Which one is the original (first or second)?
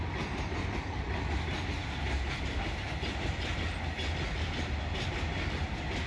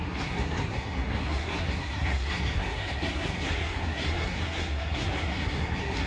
first